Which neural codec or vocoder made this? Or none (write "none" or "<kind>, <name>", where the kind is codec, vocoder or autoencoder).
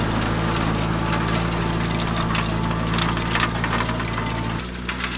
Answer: none